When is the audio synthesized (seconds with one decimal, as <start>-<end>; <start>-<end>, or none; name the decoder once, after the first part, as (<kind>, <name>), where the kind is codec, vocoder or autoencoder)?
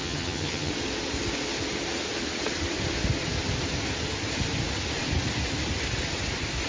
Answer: 0.0-0.7 (vocoder, HiFi-GAN)